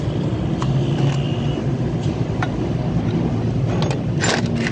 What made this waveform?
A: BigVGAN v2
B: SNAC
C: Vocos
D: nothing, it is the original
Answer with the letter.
D